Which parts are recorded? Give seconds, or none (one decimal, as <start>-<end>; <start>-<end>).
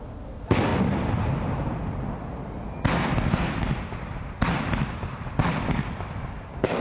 0.0-2.9; 3.5-6.8